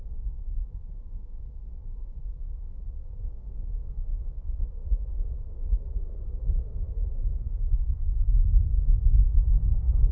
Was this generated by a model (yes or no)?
yes